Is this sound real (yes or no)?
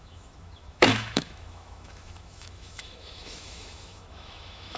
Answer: no